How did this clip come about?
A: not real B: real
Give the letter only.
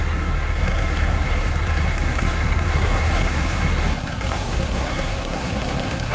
A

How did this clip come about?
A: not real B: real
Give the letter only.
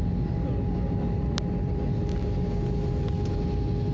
B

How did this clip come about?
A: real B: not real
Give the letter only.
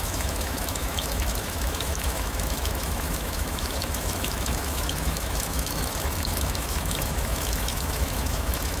B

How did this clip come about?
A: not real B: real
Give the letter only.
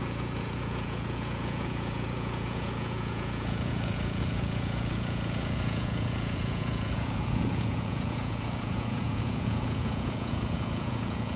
A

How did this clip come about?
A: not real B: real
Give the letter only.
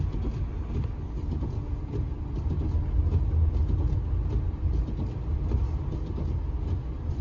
B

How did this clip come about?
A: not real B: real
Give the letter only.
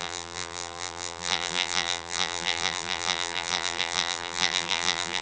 A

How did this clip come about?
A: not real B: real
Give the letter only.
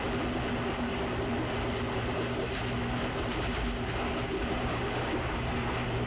B